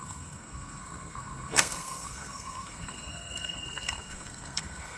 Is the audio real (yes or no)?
no